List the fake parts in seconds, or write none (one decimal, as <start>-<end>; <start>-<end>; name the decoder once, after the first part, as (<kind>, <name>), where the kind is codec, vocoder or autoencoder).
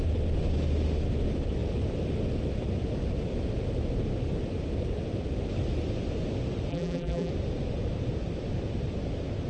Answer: 6.7-7.3 (vocoder, BigVGAN v2)